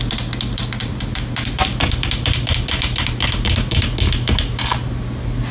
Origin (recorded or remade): recorded